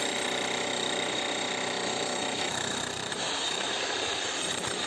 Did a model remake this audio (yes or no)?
yes